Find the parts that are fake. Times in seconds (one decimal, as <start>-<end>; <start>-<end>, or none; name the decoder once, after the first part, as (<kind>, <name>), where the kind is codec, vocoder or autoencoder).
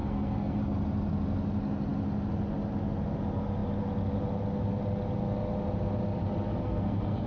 0.0-0.6 (codec, SNAC); 6.6-7.3